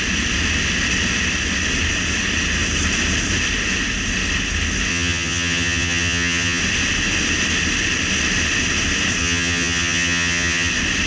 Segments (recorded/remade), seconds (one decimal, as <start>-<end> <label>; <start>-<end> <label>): 0.0-4.9 recorded; 4.9-6.6 remade; 6.6-9.2 recorded; 9.2-10.7 remade; 10.7-11.1 recorded

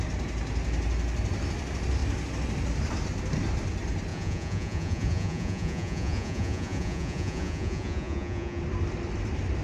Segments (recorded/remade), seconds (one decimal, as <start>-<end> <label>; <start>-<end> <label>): 0.0-4.1 recorded; 4.1-8.6 remade; 8.6-9.6 recorded

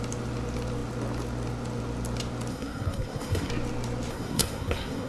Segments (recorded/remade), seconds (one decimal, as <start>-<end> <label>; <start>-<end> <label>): 0.0-2.5 recorded; 2.5-3.5 remade; 3.5-4.1 recorded; 4.1-5.1 remade

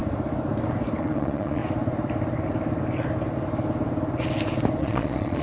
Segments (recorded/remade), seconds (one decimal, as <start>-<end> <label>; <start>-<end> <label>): 0.0-1.0 recorded; 1.0-1.6 remade; 1.6-4.8 recorded; 4.8-5.4 remade

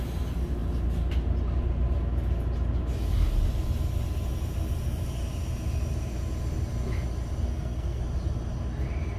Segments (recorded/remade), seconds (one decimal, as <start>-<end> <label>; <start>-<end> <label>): 0.0-7.5 recorded; 7.5-8.0 remade; 8.0-9.2 recorded

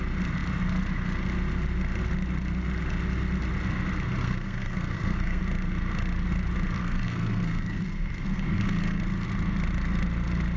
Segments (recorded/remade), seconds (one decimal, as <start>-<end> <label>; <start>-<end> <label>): 0.0-4.2 recorded; 4.2-5.4 remade; 5.4-6.8 recorded; 6.8-9.0 remade; 9.0-10.6 recorded